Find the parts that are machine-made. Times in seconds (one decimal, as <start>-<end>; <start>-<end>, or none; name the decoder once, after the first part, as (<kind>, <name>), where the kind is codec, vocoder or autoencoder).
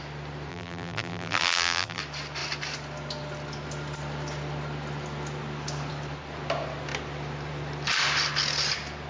0.5-2.0 (vocoder, BigVGAN v2)